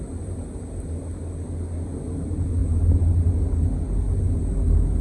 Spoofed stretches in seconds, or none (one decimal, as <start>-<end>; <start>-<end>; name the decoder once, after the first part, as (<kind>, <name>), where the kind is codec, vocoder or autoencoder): none